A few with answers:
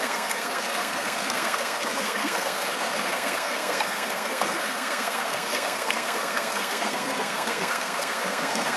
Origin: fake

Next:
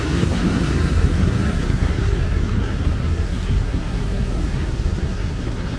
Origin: fake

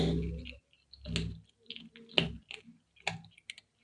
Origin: real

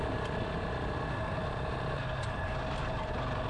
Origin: real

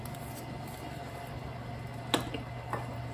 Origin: real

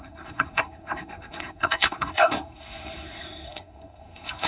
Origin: fake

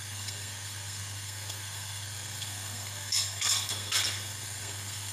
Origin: fake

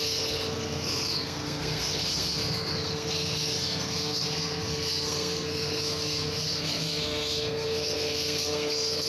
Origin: fake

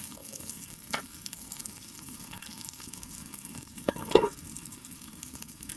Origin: fake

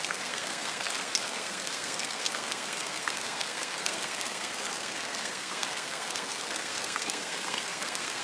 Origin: fake